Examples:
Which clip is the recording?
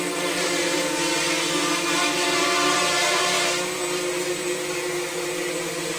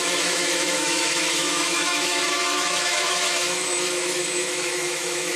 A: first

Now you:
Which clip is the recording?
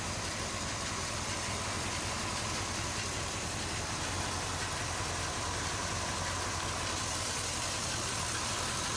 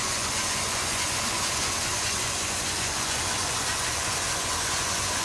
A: first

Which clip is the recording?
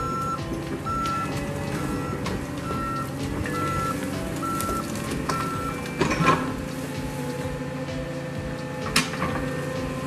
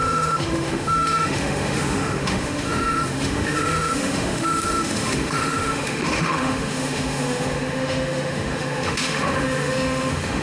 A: first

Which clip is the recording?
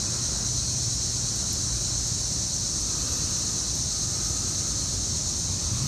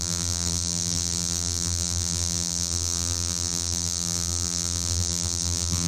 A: first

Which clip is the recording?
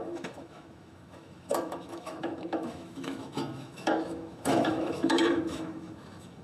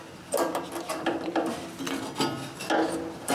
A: second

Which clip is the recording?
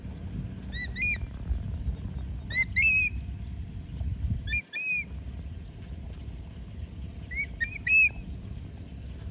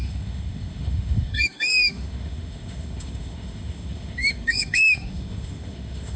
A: first